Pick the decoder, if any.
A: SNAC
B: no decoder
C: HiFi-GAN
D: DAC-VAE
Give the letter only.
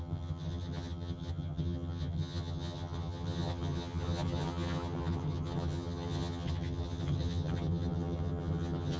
C